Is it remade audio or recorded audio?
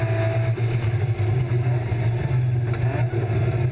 recorded